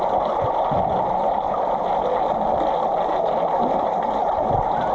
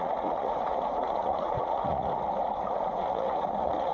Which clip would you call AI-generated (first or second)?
second